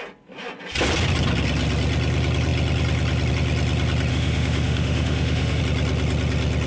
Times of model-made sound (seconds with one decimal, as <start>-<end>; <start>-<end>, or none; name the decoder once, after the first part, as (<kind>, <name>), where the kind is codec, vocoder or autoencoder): 4.1-5.6 (autoencoder, DAC-VAE)